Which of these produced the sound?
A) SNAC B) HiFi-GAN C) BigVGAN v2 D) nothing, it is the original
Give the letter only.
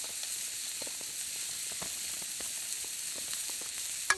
D